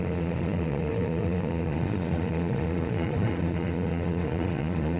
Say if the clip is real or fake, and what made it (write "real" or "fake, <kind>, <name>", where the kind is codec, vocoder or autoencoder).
fake, vocoder, Vocos